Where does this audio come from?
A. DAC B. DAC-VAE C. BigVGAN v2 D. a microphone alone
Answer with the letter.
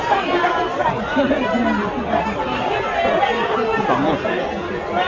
D